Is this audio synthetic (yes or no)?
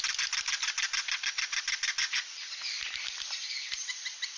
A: no